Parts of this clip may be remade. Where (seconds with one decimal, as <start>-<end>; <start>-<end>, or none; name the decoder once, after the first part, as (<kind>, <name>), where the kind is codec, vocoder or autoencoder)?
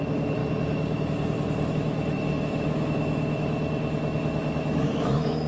0.0-0.4 (autoencoder, DAC-VAE); 1.7-5.5